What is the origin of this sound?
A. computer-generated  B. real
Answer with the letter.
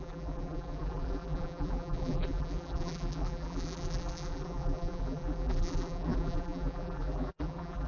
A